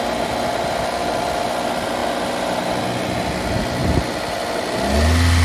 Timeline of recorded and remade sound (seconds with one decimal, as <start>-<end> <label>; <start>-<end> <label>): 0.0-5.4 recorded

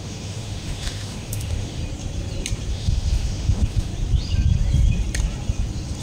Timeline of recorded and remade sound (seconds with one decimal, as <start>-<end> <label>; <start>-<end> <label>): 0.0-1.8 remade; 1.8-2.7 recorded; 2.7-3.9 remade; 3.9-6.0 recorded

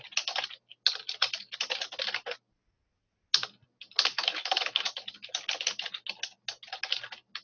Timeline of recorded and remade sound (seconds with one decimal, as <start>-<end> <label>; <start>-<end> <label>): 0.0-4.1 recorded; 4.1-4.9 remade; 4.9-7.4 recorded